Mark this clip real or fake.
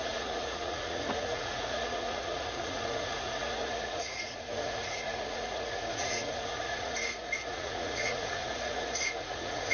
fake